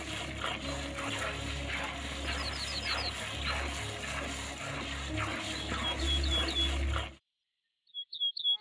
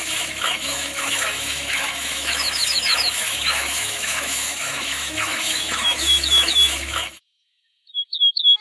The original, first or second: first